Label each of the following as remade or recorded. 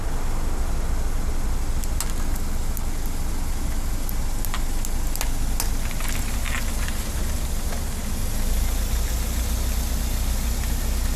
recorded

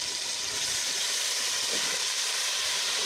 recorded